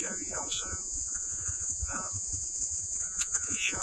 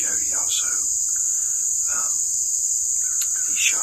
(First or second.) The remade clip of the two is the first